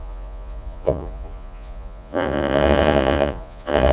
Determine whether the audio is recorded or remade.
remade